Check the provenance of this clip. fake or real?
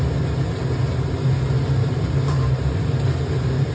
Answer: real